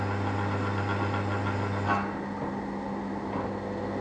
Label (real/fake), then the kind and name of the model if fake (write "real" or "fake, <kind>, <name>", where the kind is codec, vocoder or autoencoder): real